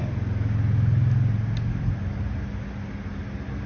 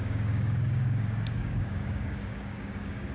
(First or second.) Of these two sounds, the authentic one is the first